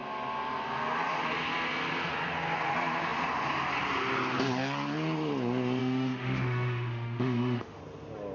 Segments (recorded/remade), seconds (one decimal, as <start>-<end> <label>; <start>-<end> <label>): 0.0-5.8 recorded; 5.8-7.8 remade; 7.8-8.3 recorded